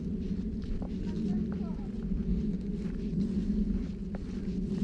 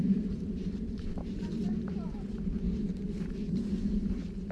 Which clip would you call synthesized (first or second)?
second